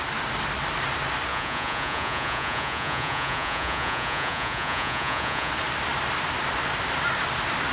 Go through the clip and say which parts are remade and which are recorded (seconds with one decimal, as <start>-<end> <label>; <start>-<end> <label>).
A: 0.0-1.3 recorded; 1.3-5.5 remade; 5.5-7.7 recorded